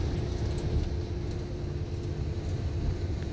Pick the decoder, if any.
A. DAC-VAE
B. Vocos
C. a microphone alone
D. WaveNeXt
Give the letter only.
C